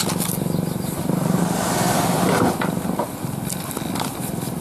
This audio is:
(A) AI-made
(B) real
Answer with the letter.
B